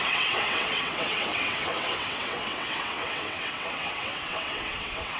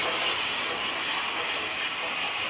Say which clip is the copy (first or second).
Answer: first